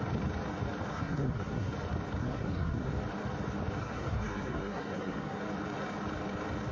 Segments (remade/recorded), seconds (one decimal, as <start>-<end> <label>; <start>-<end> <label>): 0.0-0.9 recorded; 0.9-1.7 remade; 1.7-2.2 recorded; 2.2-2.9 remade; 2.9-3.8 recorded; 3.8-5.4 remade; 5.4-6.7 recorded